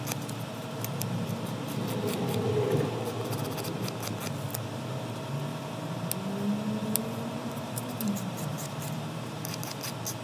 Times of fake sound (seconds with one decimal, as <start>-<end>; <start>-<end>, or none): 5.5-6.0; 7.4-9.7